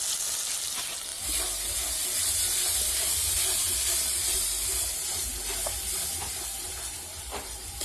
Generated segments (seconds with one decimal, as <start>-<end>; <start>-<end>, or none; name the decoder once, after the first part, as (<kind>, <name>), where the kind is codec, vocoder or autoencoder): none

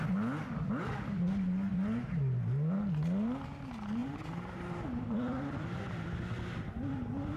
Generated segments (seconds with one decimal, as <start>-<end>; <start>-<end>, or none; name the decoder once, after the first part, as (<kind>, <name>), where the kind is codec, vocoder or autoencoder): 4.0-5.3 (vocoder, BigVGAN v2)

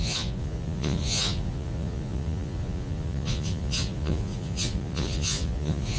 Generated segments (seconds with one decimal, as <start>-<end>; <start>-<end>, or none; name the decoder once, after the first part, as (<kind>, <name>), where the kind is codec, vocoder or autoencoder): 0.0-6.0 (vocoder, Vocos)